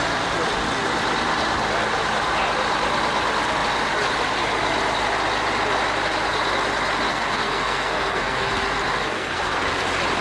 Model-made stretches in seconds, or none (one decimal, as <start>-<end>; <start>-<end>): 7.1-8.5; 9.0-9.6